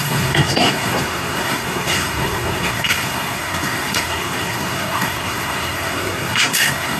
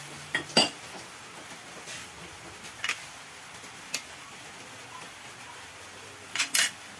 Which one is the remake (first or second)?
first